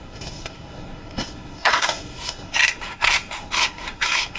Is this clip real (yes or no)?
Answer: no